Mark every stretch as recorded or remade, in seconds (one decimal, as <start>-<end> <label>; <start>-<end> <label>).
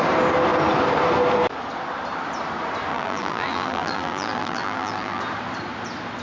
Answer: 0.0-2.9 recorded; 2.9-5.2 remade; 5.2-6.2 recorded